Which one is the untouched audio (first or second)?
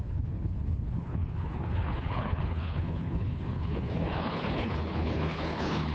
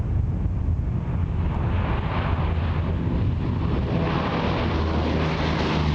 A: second